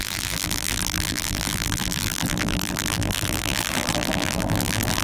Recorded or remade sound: remade